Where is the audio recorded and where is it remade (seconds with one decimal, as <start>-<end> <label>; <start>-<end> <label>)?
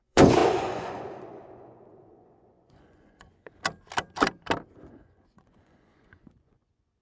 0.0-3.5 remade; 3.5-4.7 recorded; 4.7-7.0 remade